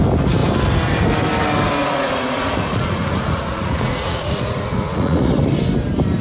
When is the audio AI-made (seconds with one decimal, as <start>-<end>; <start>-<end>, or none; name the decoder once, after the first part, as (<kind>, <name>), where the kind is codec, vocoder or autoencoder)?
1.8-5.5 (vocoder, Vocos)